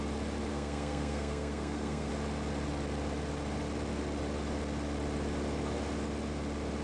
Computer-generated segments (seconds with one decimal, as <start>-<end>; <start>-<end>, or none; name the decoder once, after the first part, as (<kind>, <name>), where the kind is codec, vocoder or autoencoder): 0.5-2.1 (codec, SNAC)